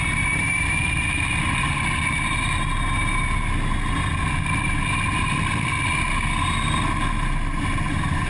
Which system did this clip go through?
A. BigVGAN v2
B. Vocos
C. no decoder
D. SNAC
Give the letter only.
C